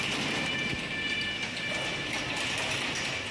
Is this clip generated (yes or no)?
no